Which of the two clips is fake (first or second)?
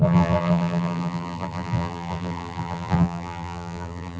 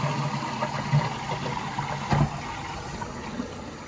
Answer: first